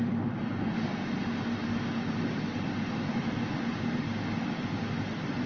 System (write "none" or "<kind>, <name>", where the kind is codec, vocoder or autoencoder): none